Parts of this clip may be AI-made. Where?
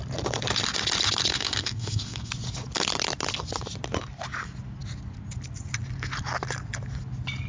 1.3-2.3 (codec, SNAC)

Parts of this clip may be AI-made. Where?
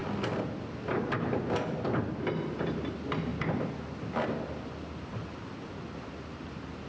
none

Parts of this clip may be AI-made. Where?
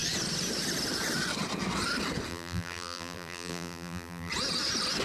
2.3-4.3 (vocoder, BigVGAN v2)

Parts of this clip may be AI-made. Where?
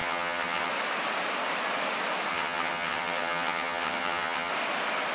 0.0-0.7 (vocoder, HiFi-GAN); 2.3-4.5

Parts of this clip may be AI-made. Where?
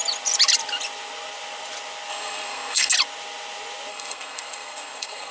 2.1-2.9 (codec, SNAC); 3.9-5.3